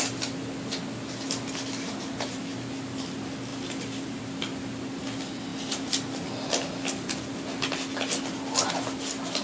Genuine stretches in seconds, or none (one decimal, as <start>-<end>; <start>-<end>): 0.0-2.5; 3.0-3.5; 4.2-9.4